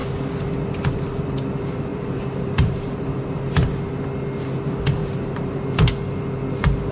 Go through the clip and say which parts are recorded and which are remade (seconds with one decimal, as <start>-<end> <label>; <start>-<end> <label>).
0.0-1.9 recorded; 1.9-4.0 remade; 4.0-5.0 recorded; 5.0-5.6 remade; 5.6-6.9 recorded